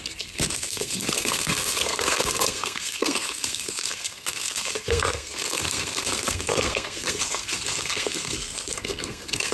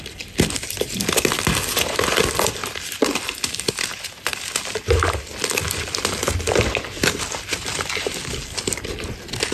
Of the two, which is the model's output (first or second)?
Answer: first